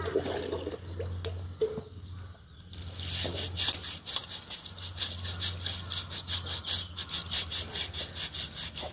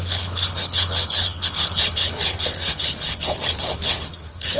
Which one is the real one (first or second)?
first